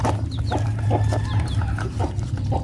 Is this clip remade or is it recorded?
recorded